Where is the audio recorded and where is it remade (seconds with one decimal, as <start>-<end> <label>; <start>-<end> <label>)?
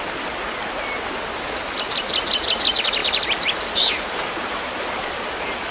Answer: 0.0-3.0 recorded; 3.0-5.2 remade; 5.2-5.7 recorded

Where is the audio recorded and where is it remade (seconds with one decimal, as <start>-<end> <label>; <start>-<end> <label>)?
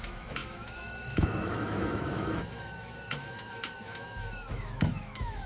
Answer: 0.0-5.5 remade